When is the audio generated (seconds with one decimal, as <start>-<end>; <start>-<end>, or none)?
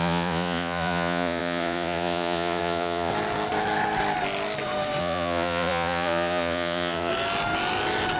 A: 0.0-3.1; 5.0-7.1